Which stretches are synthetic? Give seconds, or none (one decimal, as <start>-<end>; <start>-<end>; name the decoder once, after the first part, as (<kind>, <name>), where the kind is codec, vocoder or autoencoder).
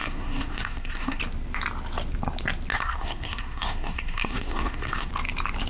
0.0-1.2 (codec, SNAC); 2.7-5.1